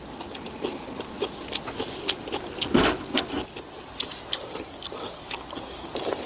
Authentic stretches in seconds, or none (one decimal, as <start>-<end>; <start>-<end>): 0.0-6.3